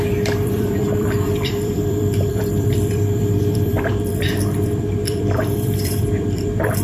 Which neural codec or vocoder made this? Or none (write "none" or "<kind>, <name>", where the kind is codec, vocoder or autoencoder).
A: vocoder, BigVGAN v2